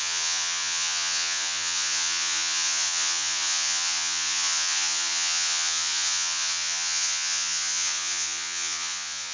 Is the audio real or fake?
fake